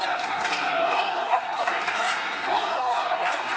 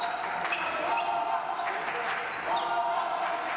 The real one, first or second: second